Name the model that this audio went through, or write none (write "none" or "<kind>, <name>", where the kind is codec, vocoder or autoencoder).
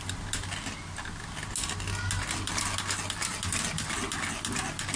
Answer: none